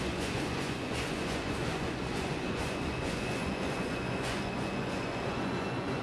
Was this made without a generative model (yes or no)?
no